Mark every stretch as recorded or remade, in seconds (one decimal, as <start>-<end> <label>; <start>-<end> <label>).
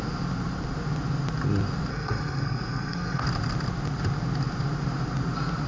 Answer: 0.0-1.9 recorded; 1.9-3.2 remade; 3.2-5.7 recorded